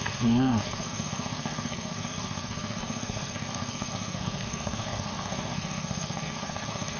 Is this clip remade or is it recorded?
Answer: remade